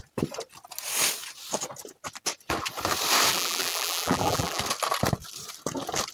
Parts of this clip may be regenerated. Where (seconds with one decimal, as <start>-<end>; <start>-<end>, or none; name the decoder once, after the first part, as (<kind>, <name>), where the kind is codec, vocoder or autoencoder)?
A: 3.3-4.6 (vocoder, BigVGAN v2)